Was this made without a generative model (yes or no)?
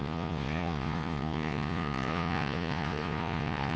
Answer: no